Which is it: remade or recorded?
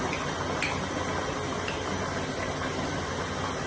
recorded